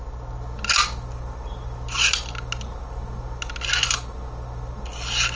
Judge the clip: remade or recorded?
recorded